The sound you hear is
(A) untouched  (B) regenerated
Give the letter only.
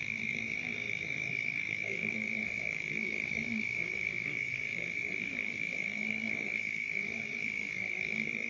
B